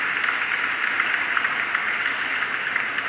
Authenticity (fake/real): real